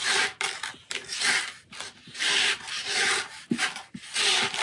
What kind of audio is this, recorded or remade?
recorded